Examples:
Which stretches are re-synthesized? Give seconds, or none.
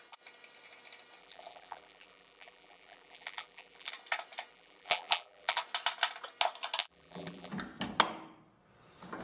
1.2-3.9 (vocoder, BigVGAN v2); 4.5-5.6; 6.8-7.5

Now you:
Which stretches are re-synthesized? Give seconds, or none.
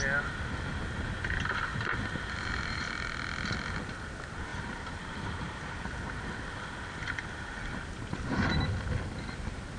1.7-2.9 (vocoder, BigVGAN v2); 4.5-6.2